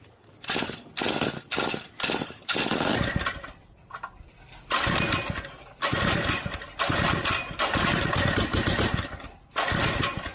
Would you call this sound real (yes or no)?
yes